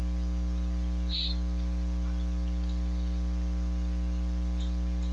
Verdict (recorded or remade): recorded